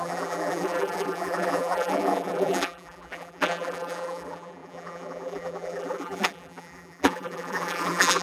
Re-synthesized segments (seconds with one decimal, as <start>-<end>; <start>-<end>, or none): 0.0-8.2